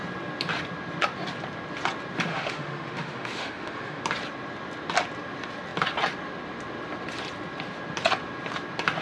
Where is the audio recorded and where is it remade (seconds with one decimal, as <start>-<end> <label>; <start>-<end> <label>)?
0.0-2.3 recorded; 2.3-4.0 remade; 4.0-9.0 recorded